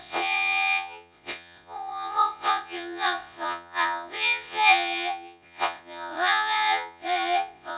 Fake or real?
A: fake